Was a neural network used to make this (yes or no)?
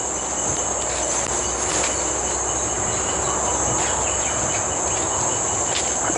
no